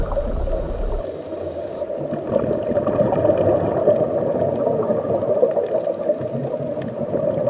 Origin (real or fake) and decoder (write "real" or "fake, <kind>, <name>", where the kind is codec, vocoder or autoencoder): real